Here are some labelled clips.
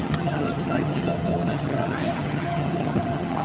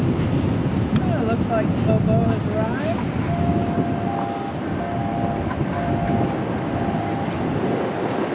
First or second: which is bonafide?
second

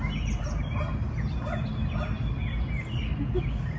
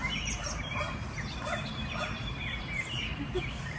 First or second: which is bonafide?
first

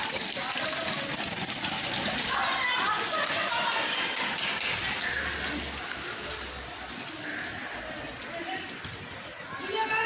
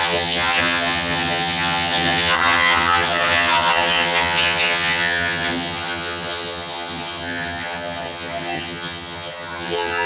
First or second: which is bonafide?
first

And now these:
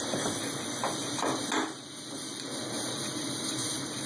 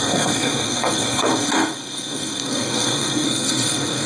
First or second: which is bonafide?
first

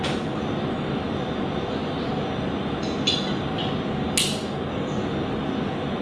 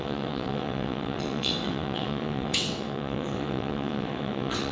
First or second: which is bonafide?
first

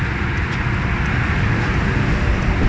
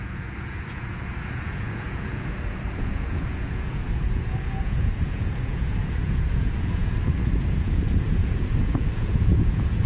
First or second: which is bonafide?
first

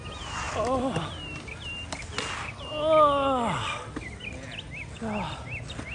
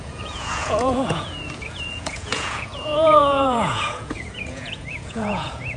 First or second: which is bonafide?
first